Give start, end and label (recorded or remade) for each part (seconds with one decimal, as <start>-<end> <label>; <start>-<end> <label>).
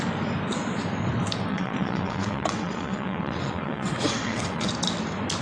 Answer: 0.0-1.5 recorded; 1.5-4.7 remade; 4.7-5.4 recorded